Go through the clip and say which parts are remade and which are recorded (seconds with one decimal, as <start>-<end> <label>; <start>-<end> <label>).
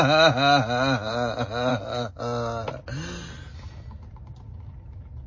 0.0-1.7 recorded; 1.7-2.2 remade; 2.2-5.3 recorded